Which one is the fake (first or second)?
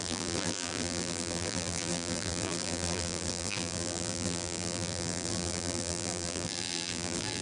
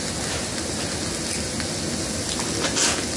first